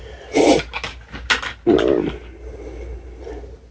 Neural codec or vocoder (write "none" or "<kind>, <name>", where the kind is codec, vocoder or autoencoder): none